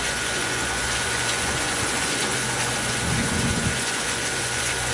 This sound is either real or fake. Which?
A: fake